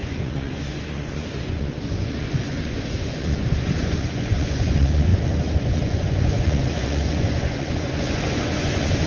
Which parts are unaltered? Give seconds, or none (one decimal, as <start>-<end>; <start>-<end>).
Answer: none

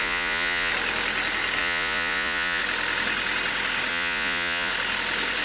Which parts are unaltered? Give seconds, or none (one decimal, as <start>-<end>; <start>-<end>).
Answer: 0.7-1.6; 2.6-3.9; 4.7-5.4

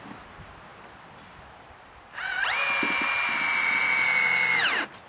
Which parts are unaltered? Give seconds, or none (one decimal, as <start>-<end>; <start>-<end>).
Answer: 0.0-5.1

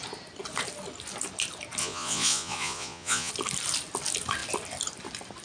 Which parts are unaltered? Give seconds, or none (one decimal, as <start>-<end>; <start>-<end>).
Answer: 0.0-1.8; 3.3-5.4